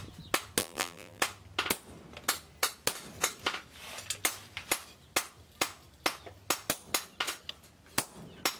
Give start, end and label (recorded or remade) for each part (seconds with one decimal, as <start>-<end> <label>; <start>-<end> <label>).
0.0-0.6 recorded; 0.6-1.2 remade; 1.2-8.6 recorded